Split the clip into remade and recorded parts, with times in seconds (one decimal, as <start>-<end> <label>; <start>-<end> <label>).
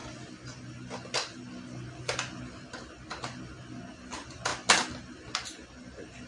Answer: 0.0-6.3 recorded